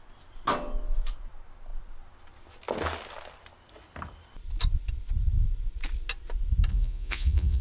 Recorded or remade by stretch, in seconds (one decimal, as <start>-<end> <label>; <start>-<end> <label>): 0.0-6.7 recorded; 6.7-7.6 remade